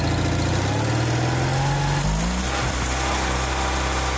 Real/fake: real